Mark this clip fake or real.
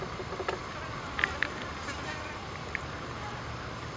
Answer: real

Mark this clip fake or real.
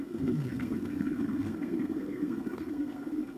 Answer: fake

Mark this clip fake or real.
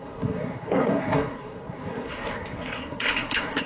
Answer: fake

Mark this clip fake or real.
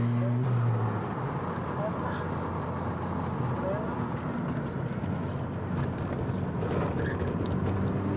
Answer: real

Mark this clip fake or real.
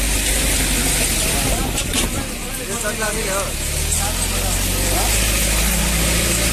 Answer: real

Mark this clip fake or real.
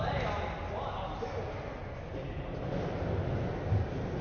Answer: real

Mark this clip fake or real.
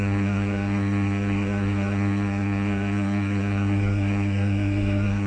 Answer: fake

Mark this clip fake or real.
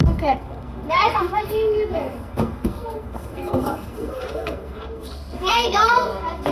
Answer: fake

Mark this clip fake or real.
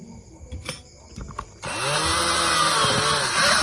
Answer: real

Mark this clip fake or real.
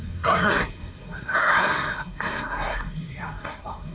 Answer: fake